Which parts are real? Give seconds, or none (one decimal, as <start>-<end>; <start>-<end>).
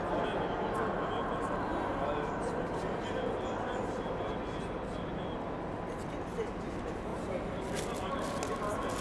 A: 0.0-9.0